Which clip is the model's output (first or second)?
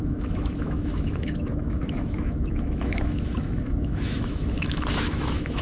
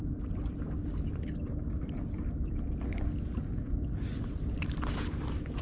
first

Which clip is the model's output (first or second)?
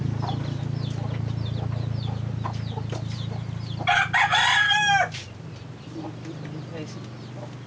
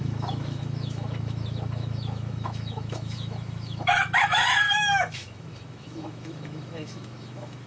second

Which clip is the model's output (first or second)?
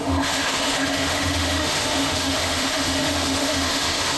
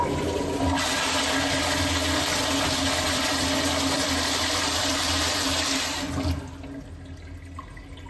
first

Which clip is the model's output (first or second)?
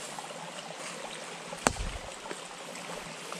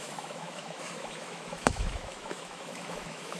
second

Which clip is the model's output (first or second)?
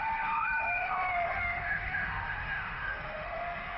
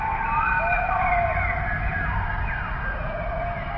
first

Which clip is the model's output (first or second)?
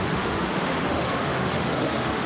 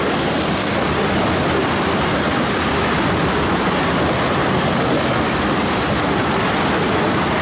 first